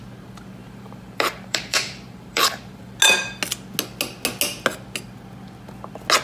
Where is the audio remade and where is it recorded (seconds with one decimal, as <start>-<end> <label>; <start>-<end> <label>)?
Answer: 0.0-0.6 recorded; 0.6-2.9 remade; 2.9-6.2 recorded